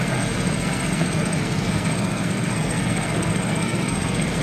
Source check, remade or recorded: remade